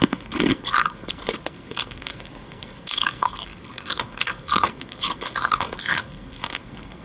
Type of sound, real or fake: fake